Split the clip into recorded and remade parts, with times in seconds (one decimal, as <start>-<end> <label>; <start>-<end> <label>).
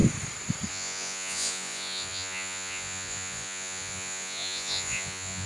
0.0-0.7 recorded; 0.7-5.5 remade